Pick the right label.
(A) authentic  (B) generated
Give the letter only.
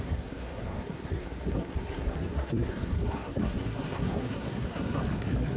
B